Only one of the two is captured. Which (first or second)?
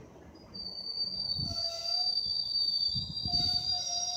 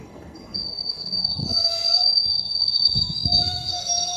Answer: first